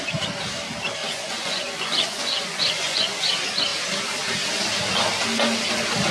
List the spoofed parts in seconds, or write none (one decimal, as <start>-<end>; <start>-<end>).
1.0-3.2